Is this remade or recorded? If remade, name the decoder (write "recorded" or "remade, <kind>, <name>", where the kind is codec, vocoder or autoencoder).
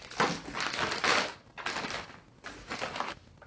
recorded